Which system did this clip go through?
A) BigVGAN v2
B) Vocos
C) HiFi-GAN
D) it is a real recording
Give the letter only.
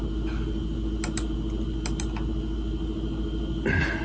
D